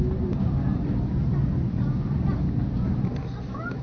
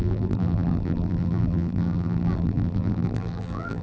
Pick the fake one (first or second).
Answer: second